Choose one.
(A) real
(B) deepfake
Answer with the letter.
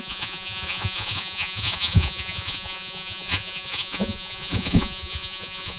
B